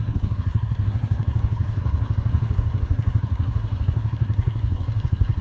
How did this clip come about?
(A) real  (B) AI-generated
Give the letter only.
B